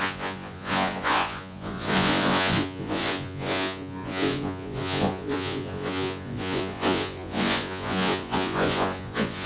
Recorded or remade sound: remade